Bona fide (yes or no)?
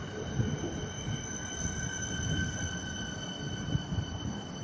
yes